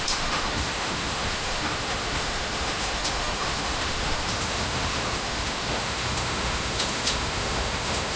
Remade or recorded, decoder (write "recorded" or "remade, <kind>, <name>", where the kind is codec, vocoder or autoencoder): remade, autoencoder, DAC-VAE